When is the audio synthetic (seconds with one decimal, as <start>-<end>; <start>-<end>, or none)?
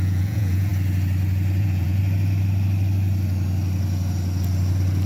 0.0-0.7; 1.6-2.0